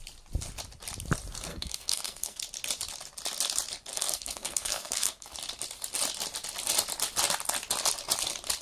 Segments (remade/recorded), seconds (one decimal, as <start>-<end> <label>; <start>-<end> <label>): 0.0-1.5 recorded; 1.5-2.4 remade; 2.4-3.9 recorded; 3.9-5.3 remade; 5.3-8.6 recorded